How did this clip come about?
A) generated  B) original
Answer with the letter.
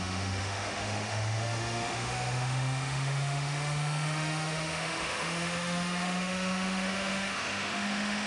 A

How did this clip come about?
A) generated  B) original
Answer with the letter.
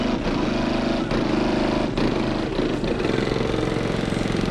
B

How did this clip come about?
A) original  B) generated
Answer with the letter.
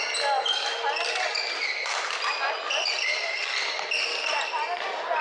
A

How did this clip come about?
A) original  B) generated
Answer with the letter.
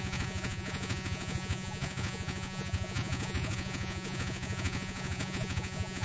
B